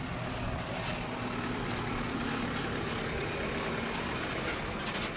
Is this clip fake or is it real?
real